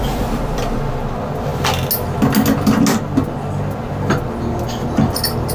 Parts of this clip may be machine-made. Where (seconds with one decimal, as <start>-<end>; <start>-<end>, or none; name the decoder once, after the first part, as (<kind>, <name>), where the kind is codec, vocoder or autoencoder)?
0.0-1.0 (vocoder, BigVGAN v2)